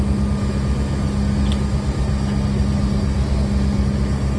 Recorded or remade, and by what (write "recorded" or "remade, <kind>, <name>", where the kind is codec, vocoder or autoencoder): recorded